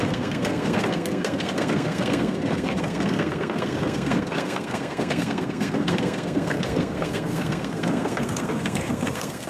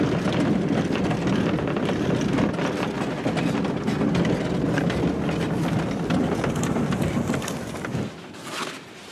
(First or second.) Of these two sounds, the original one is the second